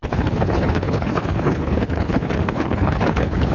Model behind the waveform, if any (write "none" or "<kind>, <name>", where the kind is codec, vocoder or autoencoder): codec, HILCodec